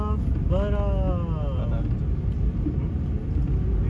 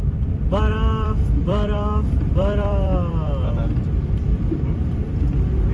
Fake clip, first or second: second